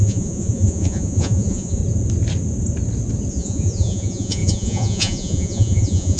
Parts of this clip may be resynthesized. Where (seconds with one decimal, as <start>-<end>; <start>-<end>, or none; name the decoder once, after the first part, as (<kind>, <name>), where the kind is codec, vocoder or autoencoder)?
0.0-1.8 (vocoder, Vocos); 3.3-6.2